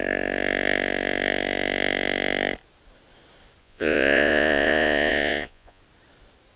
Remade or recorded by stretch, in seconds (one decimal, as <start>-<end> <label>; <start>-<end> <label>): 0.0-3.6 recorded; 3.6-5.8 remade; 5.8-6.6 recorded